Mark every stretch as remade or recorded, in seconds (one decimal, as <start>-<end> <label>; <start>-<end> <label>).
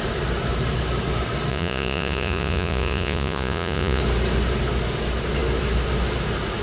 0.0-1.5 recorded; 1.5-4.0 remade; 4.0-6.6 recorded